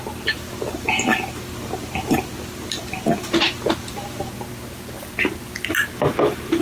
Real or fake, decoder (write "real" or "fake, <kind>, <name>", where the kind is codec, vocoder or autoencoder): real